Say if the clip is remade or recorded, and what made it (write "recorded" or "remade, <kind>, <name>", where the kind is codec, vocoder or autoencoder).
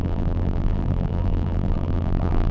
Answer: remade, vocoder, BigVGAN v2